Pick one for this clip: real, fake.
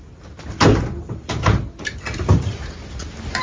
real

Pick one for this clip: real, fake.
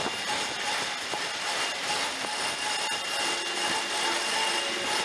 real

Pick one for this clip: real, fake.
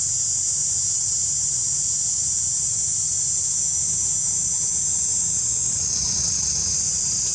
real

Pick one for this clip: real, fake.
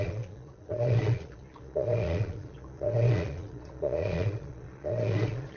fake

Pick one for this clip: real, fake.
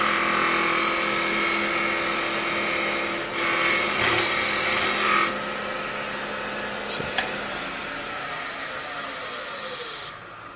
real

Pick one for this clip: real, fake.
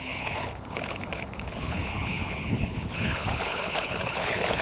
fake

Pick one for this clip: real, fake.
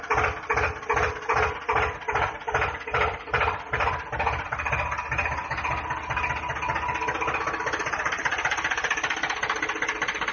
fake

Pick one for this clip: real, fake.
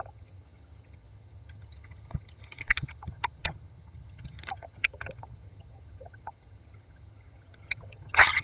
fake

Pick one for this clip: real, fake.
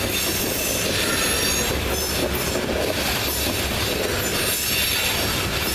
real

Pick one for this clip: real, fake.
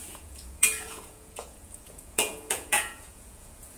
fake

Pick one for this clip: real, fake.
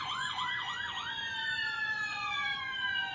fake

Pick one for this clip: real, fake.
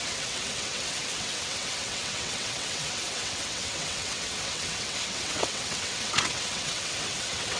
fake